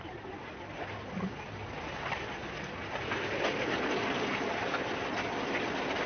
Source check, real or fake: real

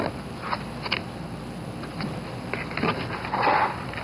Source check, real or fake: real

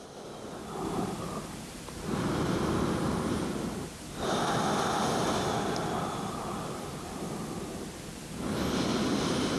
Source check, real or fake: real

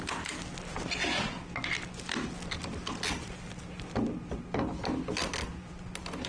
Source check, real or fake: real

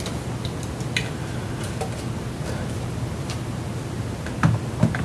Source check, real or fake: real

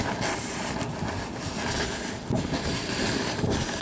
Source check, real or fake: real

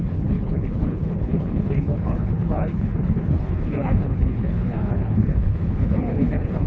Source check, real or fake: fake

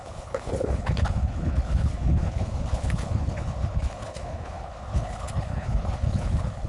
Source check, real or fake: fake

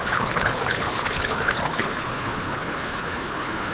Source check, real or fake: fake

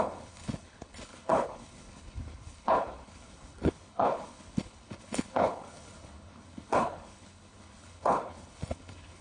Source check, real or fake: fake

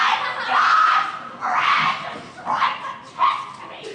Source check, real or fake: real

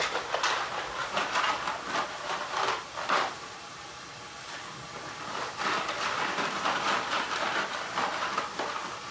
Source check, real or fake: real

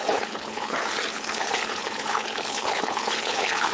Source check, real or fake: fake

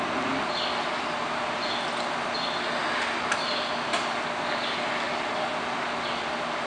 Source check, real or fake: real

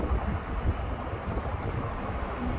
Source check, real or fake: real